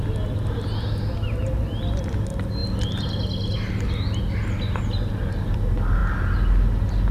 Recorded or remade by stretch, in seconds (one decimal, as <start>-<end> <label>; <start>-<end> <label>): 0.0-7.1 recorded